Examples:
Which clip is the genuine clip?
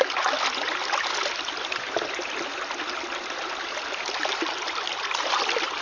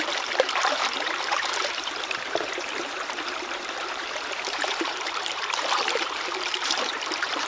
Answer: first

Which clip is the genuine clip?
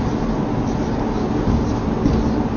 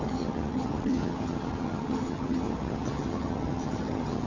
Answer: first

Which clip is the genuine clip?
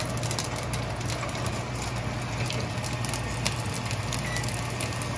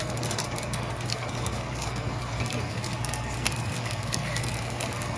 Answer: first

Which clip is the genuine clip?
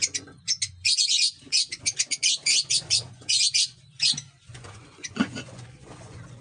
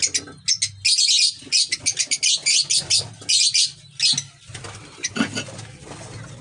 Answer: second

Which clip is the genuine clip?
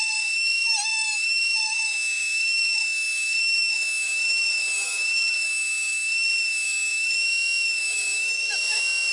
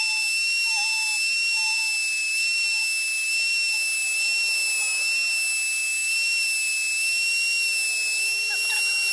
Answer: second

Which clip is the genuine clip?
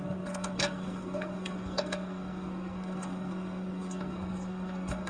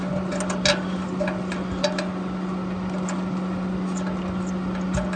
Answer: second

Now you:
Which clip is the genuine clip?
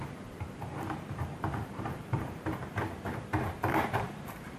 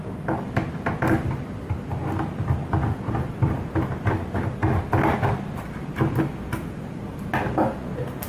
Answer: second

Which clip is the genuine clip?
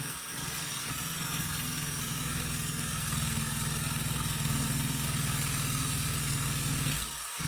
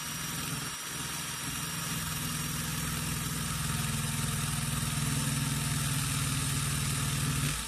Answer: second